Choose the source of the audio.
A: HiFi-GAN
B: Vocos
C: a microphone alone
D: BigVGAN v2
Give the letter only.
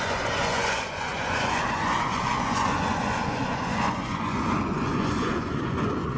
B